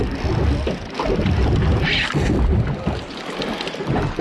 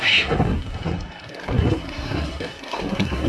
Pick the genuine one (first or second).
first